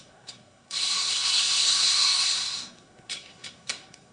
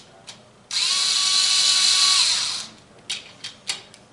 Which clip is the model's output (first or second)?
first